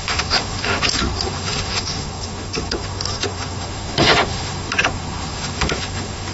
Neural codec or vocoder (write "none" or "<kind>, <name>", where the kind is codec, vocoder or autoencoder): autoencoder, DAC-VAE